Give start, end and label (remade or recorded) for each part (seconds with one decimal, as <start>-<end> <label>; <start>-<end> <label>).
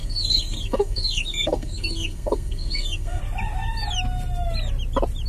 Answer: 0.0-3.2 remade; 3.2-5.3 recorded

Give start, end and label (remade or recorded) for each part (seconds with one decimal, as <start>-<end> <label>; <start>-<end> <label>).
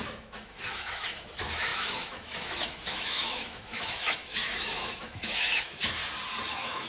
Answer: 0.0-6.0 remade; 6.0-6.5 recorded; 6.5-6.9 remade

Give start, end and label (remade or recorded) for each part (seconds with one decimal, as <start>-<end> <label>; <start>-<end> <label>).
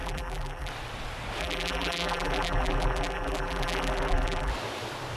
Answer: 0.0-0.7 remade; 0.7-1.4 recorded; 1.4-4.5 remade; 4.5-5.2 recorded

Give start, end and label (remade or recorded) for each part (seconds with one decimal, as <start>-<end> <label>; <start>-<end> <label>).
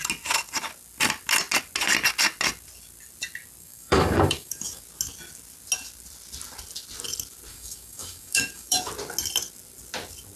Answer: 0.0-3.6 recorded; 3.6-4.8 remade; 4.8-7.5 recorded; 7.5-8.9 remade; 8.9-10.4 recorded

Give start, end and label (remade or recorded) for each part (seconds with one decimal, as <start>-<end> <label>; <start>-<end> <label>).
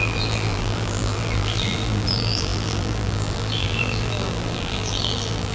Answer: 0.0-5.5 remade